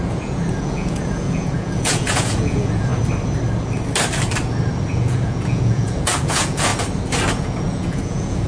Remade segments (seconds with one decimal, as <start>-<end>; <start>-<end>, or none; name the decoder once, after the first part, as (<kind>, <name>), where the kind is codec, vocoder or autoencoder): 0.0-2.9 (vocoder, Vocos); 4.8-6.7; 7.3-8.5